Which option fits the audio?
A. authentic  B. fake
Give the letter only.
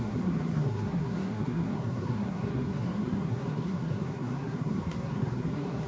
B